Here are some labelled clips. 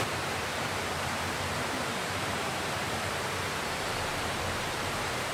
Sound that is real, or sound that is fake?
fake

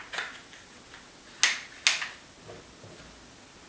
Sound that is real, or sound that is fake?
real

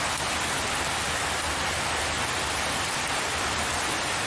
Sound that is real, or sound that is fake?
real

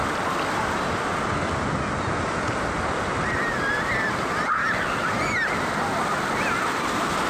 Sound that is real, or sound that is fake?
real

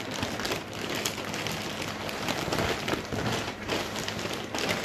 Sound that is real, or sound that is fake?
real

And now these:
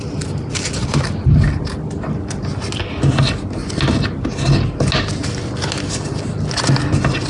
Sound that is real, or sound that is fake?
real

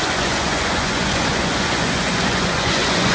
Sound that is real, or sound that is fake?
fake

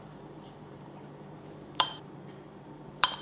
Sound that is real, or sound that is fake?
fake